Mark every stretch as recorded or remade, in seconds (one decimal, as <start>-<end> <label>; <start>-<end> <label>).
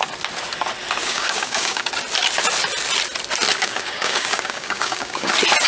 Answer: 0.0-1.0 recorded; 1.0-1.9 remade; 1.9-3.6 recorded; 3.6-5.3 remade; 5.3-5.7 recorded